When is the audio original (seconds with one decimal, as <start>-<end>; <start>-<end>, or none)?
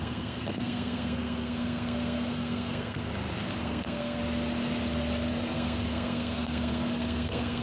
3.1-3.6; 4.2-5.3